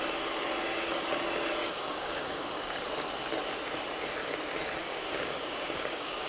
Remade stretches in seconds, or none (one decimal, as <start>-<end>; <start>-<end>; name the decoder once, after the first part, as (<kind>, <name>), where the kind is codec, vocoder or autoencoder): 1.6-2.8 (codec, DAC); 4.8-6.3